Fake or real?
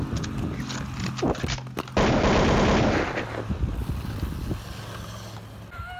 real